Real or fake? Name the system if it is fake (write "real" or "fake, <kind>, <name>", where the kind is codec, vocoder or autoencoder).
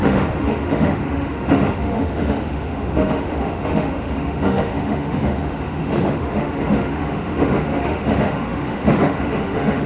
fake, autoencoder, DAC-VAE